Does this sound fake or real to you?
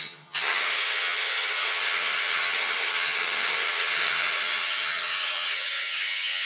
fake